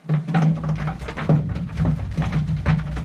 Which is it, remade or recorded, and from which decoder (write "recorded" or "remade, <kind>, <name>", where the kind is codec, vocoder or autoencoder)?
remade, vocoder, BigVGAN v2